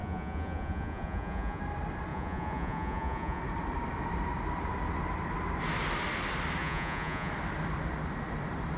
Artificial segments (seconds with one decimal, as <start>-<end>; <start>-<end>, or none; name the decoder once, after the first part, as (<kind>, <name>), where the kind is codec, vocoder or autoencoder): 0.0-1.6 (vocoder, Vocos); 2.1-3.4; 6.6-7.3